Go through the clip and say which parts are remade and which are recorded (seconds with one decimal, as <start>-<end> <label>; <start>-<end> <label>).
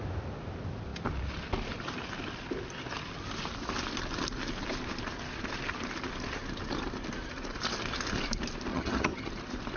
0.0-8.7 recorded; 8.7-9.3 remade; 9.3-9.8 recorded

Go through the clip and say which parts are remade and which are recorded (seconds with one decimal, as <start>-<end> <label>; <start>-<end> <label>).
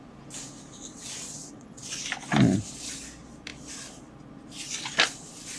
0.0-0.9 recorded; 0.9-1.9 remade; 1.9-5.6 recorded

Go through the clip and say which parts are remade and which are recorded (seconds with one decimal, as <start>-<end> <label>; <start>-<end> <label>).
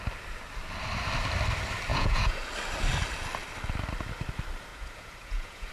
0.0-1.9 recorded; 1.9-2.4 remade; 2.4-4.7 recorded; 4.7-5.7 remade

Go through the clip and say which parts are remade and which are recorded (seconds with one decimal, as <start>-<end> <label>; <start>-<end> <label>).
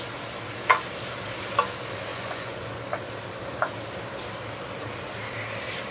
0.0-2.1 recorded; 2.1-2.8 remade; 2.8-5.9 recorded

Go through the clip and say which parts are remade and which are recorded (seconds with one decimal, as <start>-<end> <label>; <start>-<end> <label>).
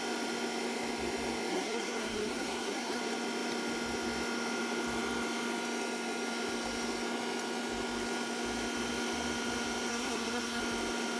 0.0-1.5 recorded; 1.5-3.0 remade; 3.0-9.9 recorded; 9.9-10.6 remade; 10.6-11.2 recorded